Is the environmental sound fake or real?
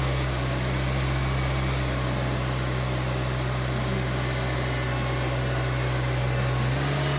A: real